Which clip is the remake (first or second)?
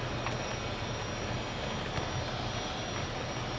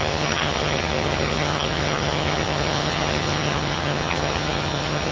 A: second